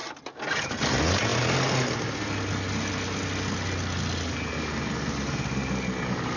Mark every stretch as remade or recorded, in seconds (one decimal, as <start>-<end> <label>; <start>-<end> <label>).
0.0-6.4 recorded